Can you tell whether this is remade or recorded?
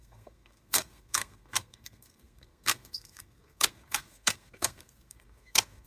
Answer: remade